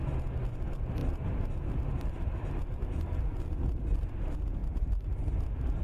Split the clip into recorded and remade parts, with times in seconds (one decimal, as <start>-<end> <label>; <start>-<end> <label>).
0.0-4.6 recorded; 4.6-5.8 remade